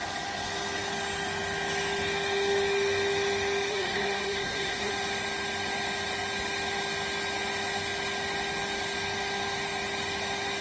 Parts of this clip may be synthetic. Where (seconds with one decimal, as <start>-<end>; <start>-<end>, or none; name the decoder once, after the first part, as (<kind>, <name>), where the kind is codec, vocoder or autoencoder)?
3.7-4.9 (codec, SNAC)